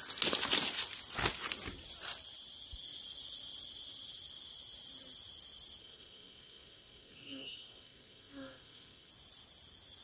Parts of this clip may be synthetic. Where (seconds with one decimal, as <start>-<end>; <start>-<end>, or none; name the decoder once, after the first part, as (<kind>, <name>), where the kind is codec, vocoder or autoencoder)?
5.8-9.1 (codec, SNAC)